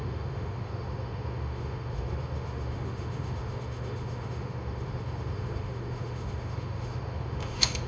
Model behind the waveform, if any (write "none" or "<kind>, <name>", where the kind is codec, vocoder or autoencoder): autoencoder, DAC-VAE